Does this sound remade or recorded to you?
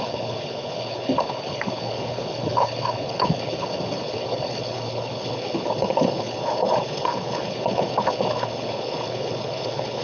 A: remade